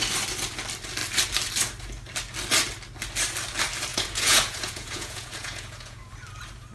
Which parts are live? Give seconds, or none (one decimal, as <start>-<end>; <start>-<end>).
0.0-3.9; 6.1-6.7